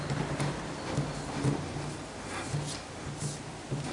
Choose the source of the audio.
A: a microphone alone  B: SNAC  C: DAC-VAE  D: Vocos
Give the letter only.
A